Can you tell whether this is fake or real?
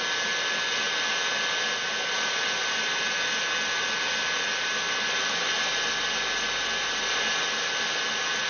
real